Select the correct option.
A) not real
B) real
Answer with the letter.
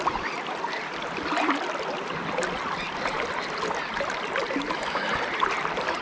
B